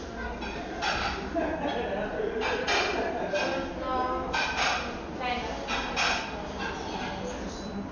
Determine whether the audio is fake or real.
real